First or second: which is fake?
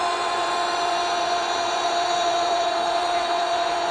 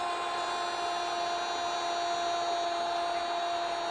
first